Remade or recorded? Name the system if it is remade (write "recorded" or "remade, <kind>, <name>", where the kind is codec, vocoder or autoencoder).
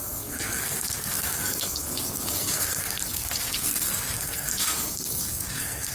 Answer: remade, codec, SNAC